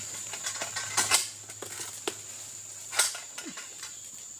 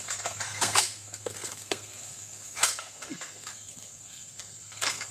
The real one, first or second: first